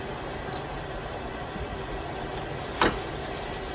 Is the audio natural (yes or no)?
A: yes